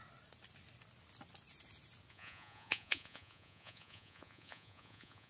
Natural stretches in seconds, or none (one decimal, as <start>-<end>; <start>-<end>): 0.0-2.1